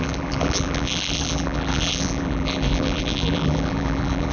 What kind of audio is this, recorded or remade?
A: remade